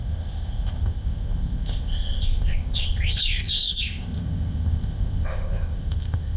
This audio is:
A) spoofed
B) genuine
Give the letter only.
A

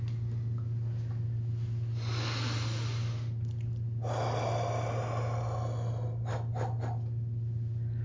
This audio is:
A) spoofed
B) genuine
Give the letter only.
B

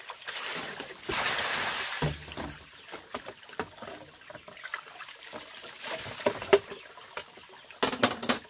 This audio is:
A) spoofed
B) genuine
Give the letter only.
B